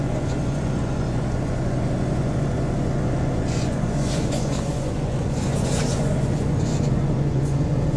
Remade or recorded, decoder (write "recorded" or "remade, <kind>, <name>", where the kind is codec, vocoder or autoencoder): remade, vocoder, Vocos